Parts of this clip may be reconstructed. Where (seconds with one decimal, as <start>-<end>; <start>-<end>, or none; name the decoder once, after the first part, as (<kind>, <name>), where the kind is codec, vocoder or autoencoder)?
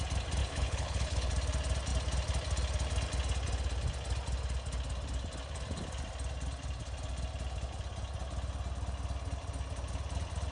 0.4-1.3 (codec, HILCodec)